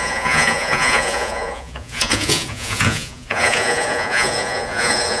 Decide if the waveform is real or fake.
fake